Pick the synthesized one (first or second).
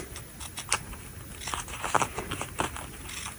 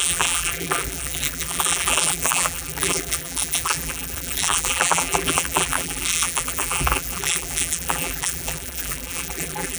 second